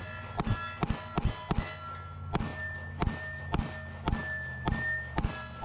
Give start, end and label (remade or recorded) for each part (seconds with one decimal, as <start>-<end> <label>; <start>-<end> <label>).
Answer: 0.0-5.6 recorded